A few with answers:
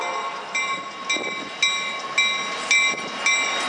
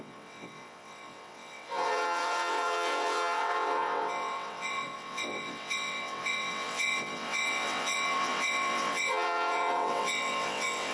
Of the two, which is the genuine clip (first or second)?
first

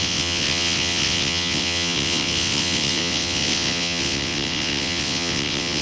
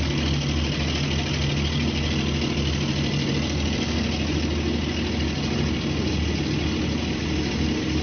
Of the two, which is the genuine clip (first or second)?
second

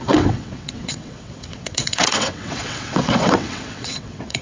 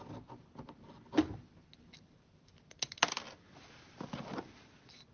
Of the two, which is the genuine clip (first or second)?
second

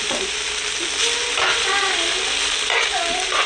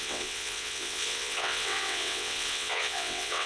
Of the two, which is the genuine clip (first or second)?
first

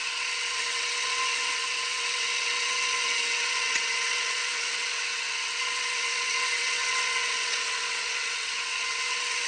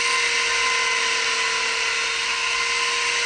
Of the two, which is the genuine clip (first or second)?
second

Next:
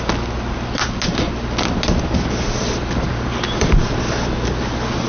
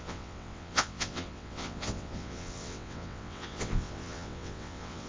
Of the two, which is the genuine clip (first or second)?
first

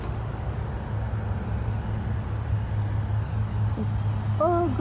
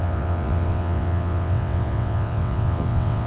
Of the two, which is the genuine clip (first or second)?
first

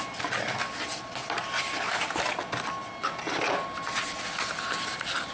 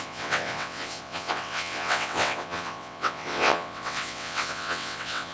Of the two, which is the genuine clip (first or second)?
first